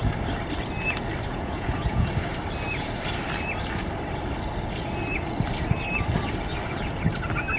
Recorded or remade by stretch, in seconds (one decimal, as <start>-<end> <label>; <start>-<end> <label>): 0.0-1.3 recorded; 1.3-2.1 remade; 2.1-7.6 recorded